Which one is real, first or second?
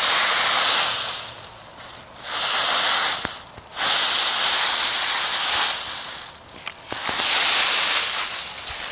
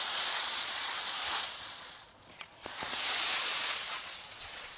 first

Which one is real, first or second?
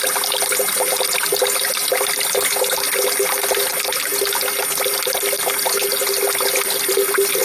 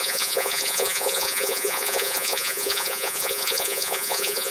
first